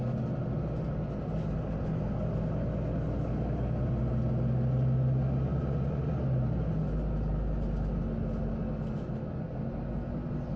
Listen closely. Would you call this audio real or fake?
real